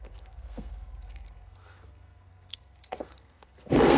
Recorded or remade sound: remade